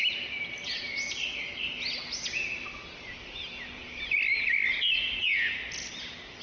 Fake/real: real